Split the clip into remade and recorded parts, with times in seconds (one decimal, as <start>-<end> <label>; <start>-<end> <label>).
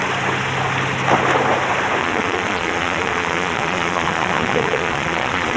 0.0-2.0 recorded; 2.0-5.6 remade